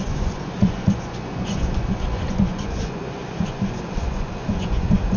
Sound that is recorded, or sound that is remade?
remade